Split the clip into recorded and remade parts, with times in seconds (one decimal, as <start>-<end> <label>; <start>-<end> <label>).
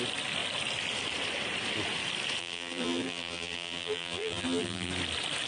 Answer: 0.0-2.4 recorded; 2.4-4.9 remade; 4.9-5.5 recorded